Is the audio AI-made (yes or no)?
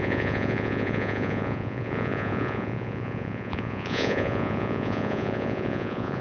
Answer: yes